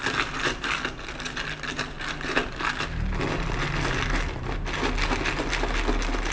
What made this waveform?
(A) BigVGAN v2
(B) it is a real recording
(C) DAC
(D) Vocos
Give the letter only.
B